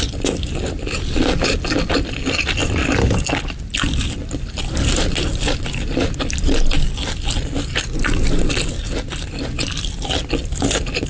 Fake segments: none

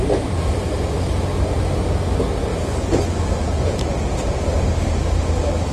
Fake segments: 3.4-4.4 (vocoder, Vocos)

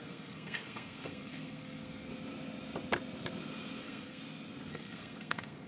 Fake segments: 0.0-2.1 (codec, SNAC); 3.8-4.2; 4.7-5.7

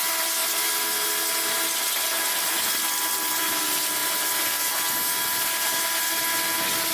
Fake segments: none

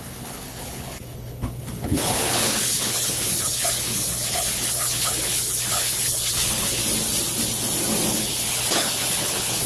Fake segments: 0.0-6.8 (codec, HILCodec); 8.1-9.7

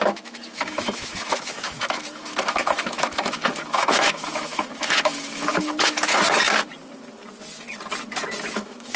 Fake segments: 0.0-6.1 (autoencoder, DAC-VAE); 8.5-9.0

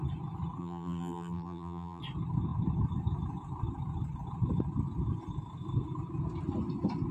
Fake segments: 0.6-2.0 (vocoder, BigVGAN v2)

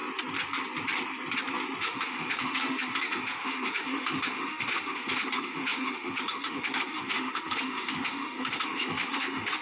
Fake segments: 1.8-9.6 (autoencoder, DAC-VAE)